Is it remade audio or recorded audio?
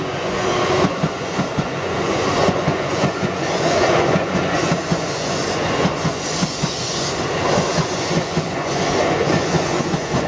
remade